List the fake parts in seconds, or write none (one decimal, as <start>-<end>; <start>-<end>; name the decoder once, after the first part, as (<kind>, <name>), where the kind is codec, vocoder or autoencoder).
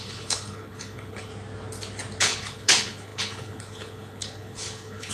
0.0-1.3 (codec, HILCodec); 2.2-5.1